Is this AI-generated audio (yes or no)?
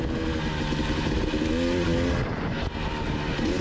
no